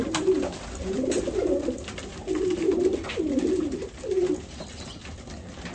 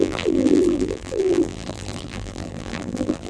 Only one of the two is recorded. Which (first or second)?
first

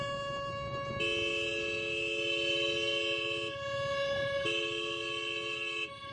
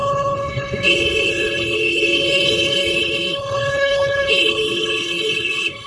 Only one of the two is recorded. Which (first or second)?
first